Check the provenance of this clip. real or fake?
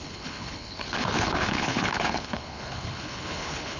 fake